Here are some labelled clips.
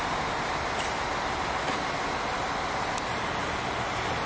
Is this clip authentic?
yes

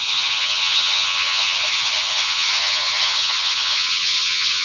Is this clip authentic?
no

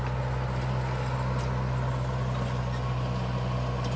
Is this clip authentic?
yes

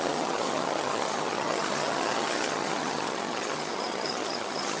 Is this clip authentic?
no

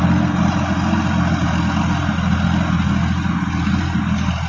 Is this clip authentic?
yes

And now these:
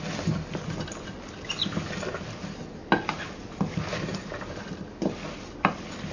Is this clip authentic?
yes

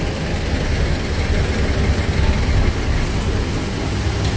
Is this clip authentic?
yes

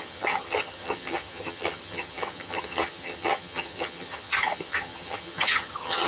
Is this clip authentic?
no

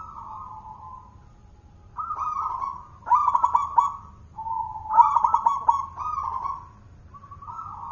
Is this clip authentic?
yes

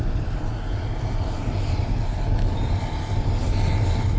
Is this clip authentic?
yes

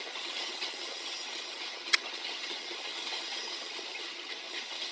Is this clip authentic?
no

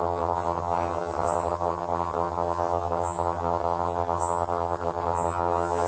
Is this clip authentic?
no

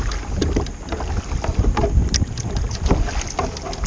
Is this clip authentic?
yes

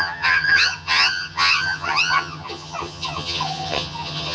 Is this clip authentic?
no